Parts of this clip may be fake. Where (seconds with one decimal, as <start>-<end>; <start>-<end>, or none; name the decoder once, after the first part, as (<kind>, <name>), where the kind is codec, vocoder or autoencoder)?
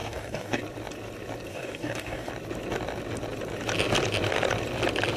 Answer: 0.0-0.6 (codec, DAC); 1.5-2.3